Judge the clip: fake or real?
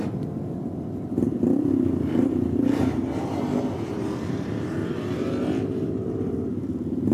fake